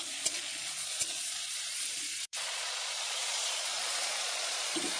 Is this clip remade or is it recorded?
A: remade